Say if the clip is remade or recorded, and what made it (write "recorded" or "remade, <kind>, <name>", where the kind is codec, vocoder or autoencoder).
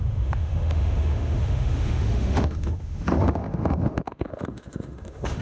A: remade, autoencoder, DAC-VAE